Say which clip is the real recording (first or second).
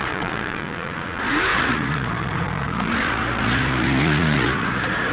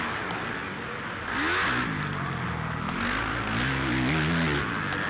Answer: second